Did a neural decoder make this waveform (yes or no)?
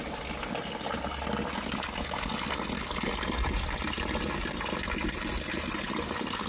no